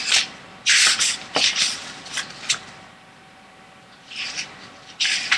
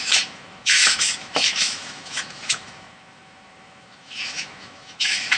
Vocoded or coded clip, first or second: second